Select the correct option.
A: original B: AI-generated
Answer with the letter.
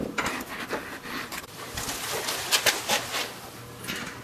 A